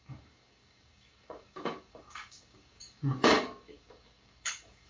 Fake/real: fake